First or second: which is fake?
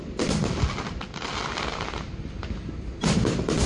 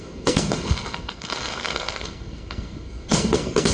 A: second